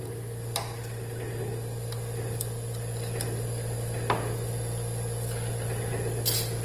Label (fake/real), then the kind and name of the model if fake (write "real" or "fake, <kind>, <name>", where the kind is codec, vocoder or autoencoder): real